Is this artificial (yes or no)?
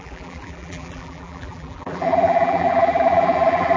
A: yes